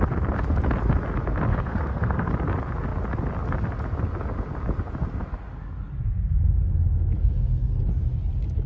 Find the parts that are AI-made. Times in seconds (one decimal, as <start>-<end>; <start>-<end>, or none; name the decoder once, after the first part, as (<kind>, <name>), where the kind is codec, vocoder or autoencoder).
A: 1.5-2.3 (codec, SNAC); 7.2-7.8